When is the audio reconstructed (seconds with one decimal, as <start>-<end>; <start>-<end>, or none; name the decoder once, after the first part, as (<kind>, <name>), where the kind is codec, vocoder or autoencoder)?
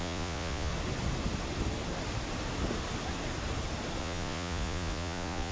0.0-0.7 (vocoder, Vocos); 4.0-5.5